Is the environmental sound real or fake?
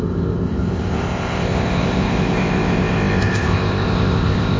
fake